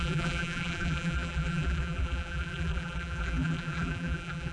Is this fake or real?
fake